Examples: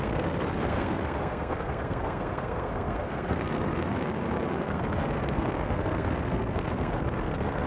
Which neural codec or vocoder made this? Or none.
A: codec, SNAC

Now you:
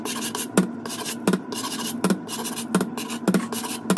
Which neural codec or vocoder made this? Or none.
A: none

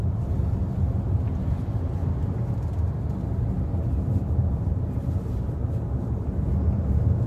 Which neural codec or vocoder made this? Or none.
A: none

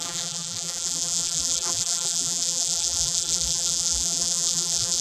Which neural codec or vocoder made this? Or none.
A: vocoder, BigVGAN v2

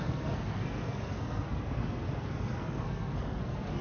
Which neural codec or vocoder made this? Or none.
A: codec, SNAC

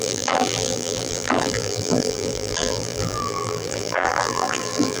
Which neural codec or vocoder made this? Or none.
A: vocoder, BigVGAN v2